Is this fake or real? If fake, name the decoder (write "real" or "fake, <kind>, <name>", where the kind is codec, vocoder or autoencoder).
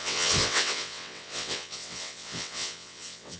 fake, vocoder, WaveNeXt